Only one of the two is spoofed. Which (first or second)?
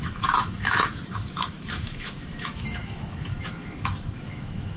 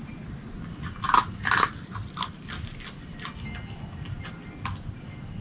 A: first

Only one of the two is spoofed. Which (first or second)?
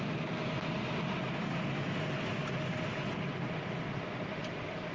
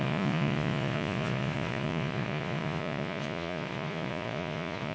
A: second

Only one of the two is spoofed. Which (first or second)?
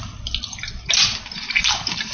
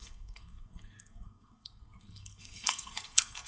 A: second